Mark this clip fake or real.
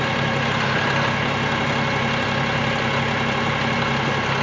real